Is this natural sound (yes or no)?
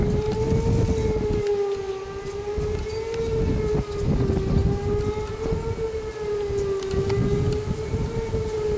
yes